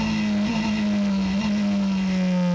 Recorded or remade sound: recorded